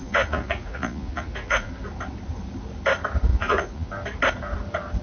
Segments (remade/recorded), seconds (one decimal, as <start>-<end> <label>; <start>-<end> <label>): 0.0-1.7 remade; 1.7-3.3 recorded; 3.3-3.9 remade; 3.9-5.0 recorded